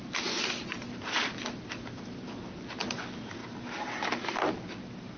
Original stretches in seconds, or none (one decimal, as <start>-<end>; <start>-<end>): 0.0-5.2